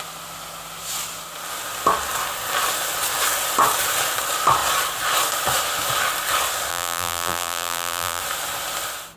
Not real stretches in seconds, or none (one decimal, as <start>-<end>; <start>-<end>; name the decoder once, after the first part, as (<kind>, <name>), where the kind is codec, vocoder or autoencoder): 6.7-8.2 (vocoder, BigVGAN v2)